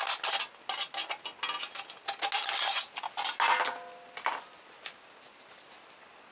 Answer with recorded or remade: recorded